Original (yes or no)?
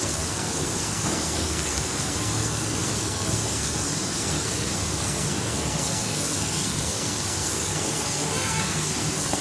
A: no